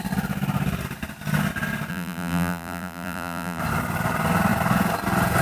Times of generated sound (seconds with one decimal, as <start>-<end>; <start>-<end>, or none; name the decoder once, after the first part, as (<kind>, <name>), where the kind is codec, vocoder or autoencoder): 1.9-3.6 (vocoder, BigVGAN v2)